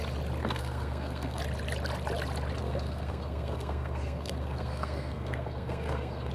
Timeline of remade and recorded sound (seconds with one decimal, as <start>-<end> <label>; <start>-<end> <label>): 0.0-0.4 recorded; 0.4-1.4 remade; 1.4-2.6 recorded; 2.6-6.3 remade